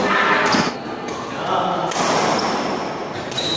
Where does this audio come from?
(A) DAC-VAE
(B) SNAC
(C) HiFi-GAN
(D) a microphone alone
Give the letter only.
D